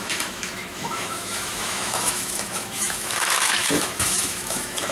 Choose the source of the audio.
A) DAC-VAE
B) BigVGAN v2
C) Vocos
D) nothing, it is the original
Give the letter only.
A